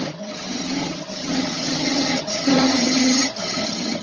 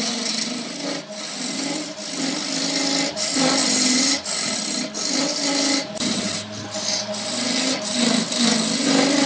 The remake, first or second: first